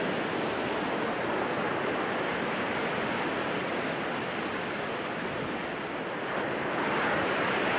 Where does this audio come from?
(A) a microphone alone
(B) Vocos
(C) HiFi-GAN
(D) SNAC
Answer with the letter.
A